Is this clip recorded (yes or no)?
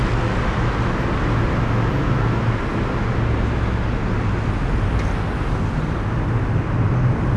yes